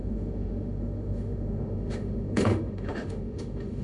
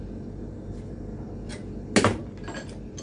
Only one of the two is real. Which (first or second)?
second